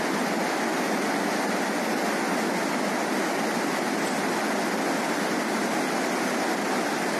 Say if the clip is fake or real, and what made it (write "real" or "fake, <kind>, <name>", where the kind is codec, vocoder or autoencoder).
real